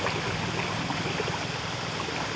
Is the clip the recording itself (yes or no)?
yes